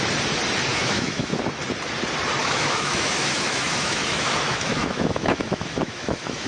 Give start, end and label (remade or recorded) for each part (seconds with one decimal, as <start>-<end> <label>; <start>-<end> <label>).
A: 0.0-0.7 recorded; 0.7-1.4 remade; 1.4-2.4 recorded; 2.4-6.5 remade